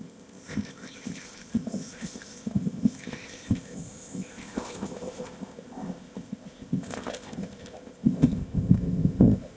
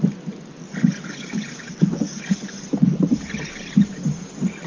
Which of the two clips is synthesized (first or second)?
first